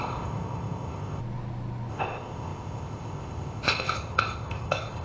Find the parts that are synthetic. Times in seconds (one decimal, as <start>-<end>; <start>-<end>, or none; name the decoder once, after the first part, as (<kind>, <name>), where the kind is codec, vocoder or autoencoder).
0.0-1.2 (codec, ZipCodec); 1.9-5.0